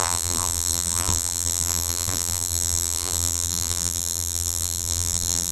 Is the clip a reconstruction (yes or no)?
yes